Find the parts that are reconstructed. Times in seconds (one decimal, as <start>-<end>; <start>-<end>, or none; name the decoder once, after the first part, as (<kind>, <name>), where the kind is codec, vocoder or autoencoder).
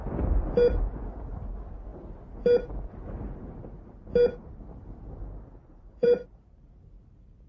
5.6-6.3 (vocoder, Vocos)